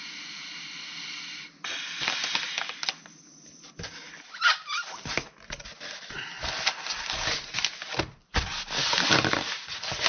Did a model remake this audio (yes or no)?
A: no